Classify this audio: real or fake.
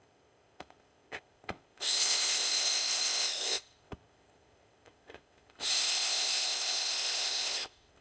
fake